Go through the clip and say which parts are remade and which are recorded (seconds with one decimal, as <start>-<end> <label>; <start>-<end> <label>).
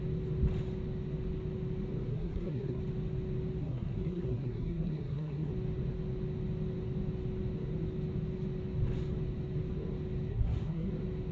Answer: 0.0-2.1 recorded; 2.1-2.8 remade; 2.8-3.6 recorded; 3.6-5.5 remade; 5.5-10.3 recorded; 10.3-10.9 remade; 10.9-11.3 recorded